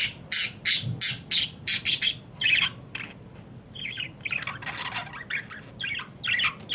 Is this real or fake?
real